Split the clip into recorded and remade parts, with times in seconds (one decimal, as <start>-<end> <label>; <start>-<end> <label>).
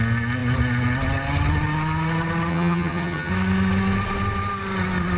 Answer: 0.0-2.5 recorded; 2.5-3.3 remade; 3.3-5.2 recorded